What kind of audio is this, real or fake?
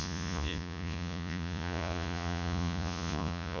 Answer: fake